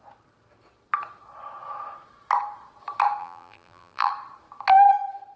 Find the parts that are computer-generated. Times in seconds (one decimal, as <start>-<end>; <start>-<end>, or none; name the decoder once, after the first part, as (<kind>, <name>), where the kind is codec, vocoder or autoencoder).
3.2-4.1 (vocoder, BigVGAN v2)